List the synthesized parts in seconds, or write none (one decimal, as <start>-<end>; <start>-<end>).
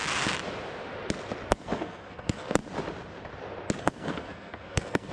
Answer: 1.5-2.6; 3.8-5.1